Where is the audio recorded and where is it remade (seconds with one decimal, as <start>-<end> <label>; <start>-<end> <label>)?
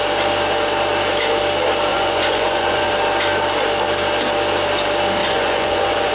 0.0-1.9 recorded; 1.9-2.9 remade; 2.9-5.2 recorded; 5.2-6.1 remade